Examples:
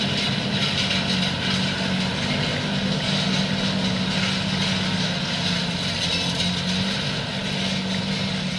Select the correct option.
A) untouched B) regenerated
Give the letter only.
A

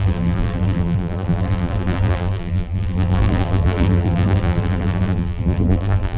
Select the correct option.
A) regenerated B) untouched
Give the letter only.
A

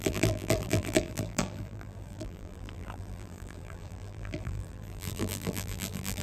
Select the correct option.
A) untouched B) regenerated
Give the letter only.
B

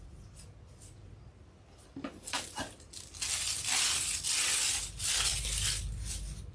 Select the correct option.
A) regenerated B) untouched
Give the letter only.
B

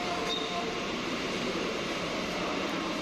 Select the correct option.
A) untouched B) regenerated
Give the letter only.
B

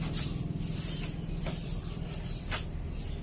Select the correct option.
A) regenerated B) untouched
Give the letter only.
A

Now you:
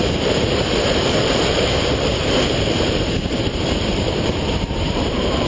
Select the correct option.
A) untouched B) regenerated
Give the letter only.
B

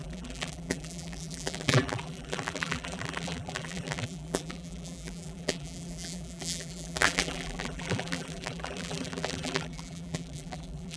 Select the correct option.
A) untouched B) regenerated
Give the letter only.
B